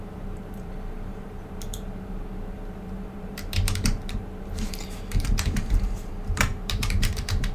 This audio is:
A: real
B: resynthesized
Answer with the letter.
B